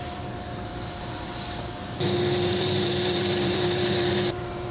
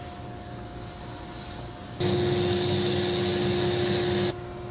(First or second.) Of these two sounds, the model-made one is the first